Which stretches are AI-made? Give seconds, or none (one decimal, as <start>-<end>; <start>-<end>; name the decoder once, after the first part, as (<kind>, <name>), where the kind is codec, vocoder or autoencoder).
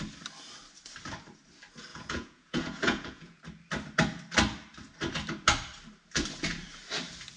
1.9-3.4 (vocoder, Vocos)